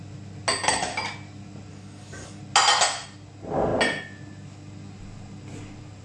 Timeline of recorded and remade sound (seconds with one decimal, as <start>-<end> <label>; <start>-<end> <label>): 0.0-1.7 recorded; 1.7-2.4 remade; 2.4-6.0 recorded

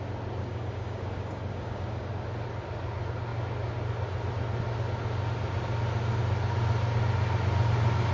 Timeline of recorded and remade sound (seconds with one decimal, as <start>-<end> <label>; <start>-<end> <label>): 0.0-0.4 recorded; 0.4-2.1 remade; 2.1-8.1 recorded

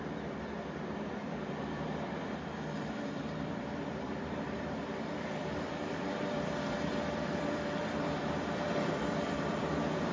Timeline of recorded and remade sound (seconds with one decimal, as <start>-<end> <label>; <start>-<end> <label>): 0.0-10.1 remade